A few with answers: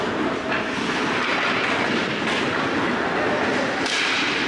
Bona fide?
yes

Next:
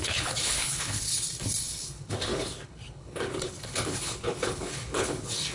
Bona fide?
no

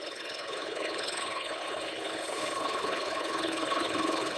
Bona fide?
no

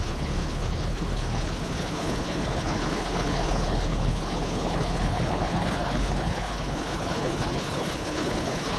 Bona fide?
no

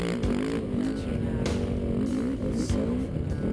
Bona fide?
yes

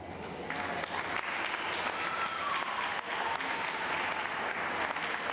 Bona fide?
yes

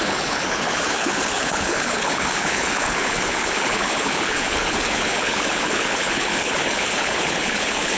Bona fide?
no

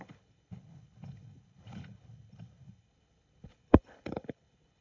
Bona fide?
no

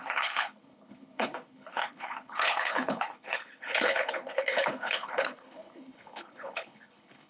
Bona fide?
no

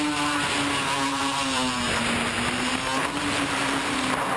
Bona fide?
yes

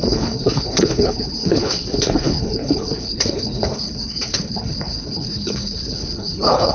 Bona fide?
no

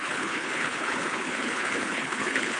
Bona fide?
no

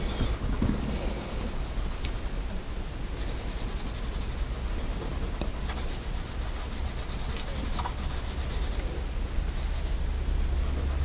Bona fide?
yes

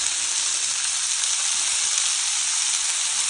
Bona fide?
yes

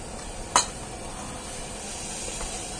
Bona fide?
yes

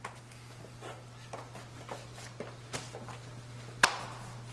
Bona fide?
yes